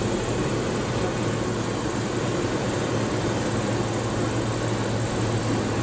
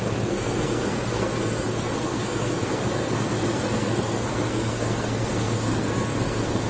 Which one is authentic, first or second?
first